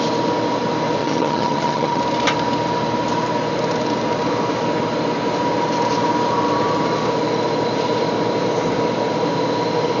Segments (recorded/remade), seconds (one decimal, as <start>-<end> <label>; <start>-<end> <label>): 0.0-1.0 recorded; 1.0-2.0 remade; 2.0-10.0 recorded